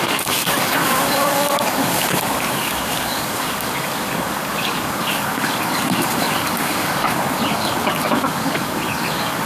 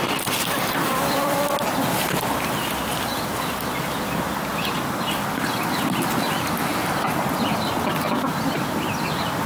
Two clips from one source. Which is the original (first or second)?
second